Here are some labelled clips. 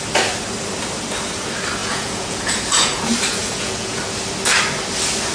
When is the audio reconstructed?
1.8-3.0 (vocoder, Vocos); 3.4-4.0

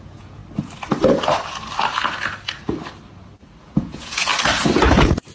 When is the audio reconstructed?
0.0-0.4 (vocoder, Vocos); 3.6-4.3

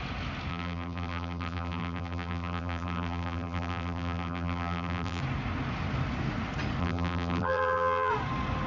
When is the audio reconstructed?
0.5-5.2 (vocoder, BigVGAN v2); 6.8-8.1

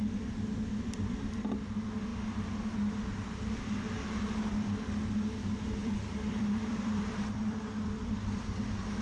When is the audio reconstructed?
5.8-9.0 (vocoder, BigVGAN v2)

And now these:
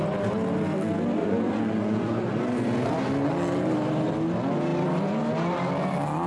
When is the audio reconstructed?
1.2-2.4 (vocoder, Vocos)